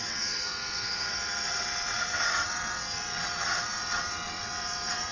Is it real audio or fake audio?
fake